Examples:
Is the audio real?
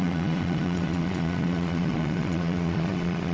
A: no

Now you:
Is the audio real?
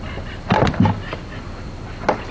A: yes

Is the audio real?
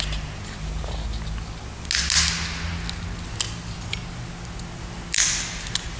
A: yes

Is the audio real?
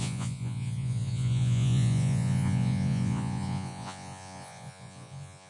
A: no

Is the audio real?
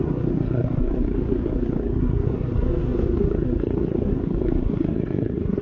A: no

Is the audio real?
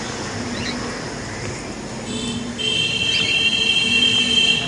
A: yes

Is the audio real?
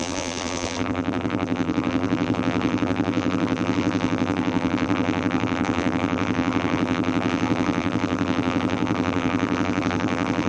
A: no